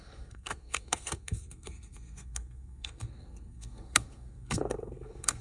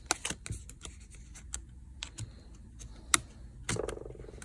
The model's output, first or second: first